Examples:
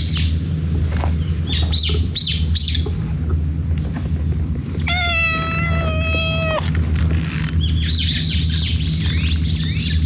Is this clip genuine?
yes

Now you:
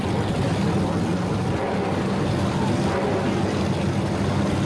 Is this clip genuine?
yes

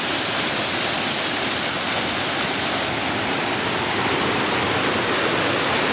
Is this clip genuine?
yes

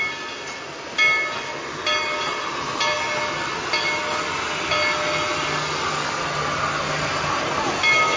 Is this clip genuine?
yes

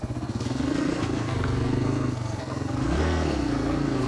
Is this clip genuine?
no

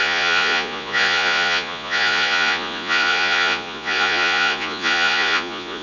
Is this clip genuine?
no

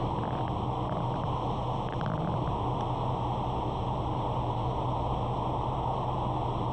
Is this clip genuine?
yes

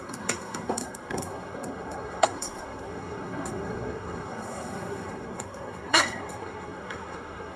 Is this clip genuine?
no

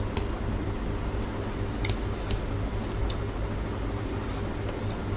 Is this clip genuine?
yes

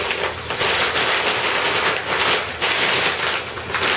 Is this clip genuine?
yes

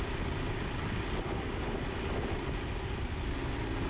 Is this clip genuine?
yes